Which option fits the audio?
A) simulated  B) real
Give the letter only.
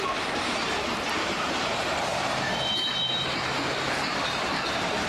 A